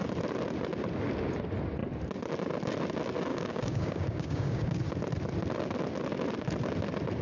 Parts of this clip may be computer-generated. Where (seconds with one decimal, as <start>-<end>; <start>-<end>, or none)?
3.3-4.8